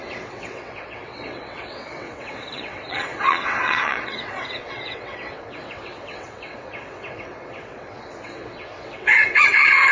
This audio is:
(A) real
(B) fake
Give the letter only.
B